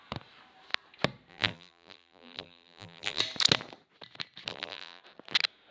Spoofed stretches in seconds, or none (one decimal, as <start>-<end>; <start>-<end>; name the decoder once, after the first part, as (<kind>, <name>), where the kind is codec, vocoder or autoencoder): 1.3-3.2 (vocoder, BigVGAN v2); 4.5-5.0